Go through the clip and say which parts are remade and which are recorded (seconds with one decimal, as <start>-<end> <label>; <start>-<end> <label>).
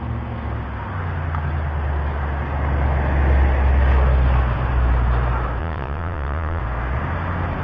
0.0-5.6 recorded; 5.6-6.6 remade; 6.6-7.6 recorded